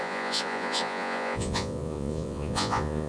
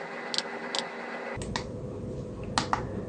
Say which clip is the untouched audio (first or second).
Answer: second